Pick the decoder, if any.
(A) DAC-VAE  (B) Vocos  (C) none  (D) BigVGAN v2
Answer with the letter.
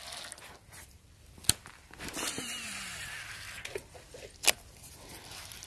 C